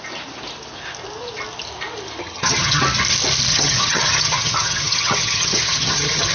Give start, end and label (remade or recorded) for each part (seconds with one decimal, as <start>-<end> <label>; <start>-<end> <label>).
0.0-2.2 recorded; 2.2-2.8 remade; 2.8-3.5 recorded; 3.5-6.3 remade